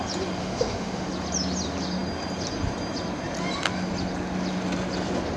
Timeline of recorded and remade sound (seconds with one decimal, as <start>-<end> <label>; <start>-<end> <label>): 0.0-0.4 recorded; 0.4-1.1 remade; 1.1-5.4 recorded